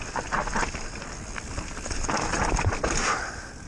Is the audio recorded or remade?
recorded